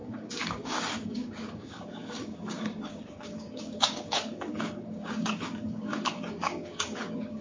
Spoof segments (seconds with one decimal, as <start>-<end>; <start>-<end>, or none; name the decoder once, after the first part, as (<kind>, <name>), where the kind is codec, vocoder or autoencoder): 0.0-7.4 (codec, DAC)